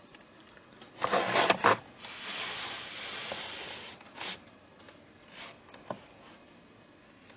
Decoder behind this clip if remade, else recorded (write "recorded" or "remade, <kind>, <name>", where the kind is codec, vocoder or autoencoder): recorded